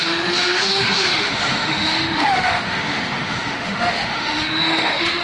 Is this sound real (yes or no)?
no